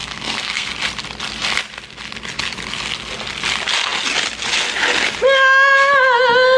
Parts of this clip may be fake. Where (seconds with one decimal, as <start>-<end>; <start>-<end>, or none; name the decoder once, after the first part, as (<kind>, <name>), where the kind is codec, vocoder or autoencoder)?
0.0-0.7 (codec, SNAC)

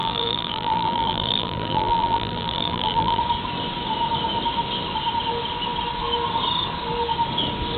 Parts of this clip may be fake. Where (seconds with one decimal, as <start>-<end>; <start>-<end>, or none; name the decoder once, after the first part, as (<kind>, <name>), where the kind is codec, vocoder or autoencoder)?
0.0-3.2 (vocoder, BigVGAN v2)

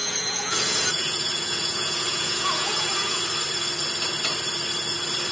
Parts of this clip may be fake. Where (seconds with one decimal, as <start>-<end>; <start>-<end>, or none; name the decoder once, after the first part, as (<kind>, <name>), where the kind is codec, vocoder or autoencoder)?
0.0-3.2 (vocoder, Vocos)

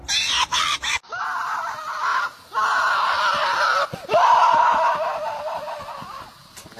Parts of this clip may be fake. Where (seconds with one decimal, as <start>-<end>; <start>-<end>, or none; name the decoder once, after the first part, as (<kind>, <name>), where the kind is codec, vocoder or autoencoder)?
0.5-1.5 (vocoder, BigVGAN v2); 2.1-6.2

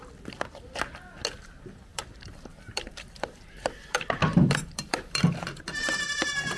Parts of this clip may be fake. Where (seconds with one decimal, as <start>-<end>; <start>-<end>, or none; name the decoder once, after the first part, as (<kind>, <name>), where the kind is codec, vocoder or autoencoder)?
0.0-0.6 (vocoder, BigVGAN v2); 1.9-5.7

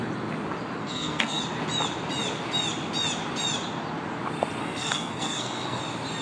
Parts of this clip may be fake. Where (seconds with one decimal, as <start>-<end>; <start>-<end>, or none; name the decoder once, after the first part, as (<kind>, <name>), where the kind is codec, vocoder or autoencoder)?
0.8-1.4 (codec, SNAC); 4.6-5.8

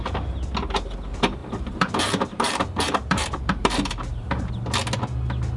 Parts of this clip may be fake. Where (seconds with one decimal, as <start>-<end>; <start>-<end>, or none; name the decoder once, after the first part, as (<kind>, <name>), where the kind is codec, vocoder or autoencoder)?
1.4-4.5 (vocoder, BigVGAN v2)

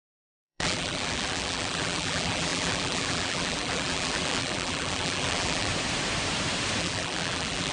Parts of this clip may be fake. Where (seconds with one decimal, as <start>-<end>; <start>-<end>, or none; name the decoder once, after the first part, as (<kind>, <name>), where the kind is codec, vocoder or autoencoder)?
0.0-5.7 (vocoder, BigVGAN v2); 6.8-7.7